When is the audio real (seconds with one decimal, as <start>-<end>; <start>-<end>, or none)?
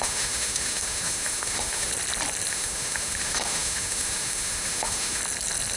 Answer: 1.9-2.5; 5.2-5.8